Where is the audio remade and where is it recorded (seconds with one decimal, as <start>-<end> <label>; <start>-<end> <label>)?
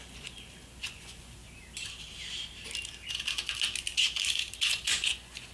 0.0-1.4 remade; 1.4-4.7 recorded; 4.7-5.5 remade